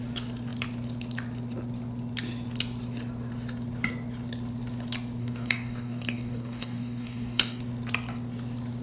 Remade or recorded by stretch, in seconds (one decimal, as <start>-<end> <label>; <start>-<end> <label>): 0.0-5.2 recorded; 5.2-7.6 remade; 7.6-8.8 recorded